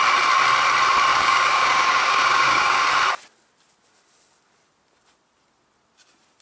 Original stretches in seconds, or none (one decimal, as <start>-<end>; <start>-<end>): 0.0-1.1; 2.8-6.4